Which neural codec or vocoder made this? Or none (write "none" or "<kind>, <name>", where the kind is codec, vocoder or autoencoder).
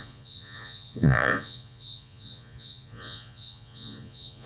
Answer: vocoder, Vocos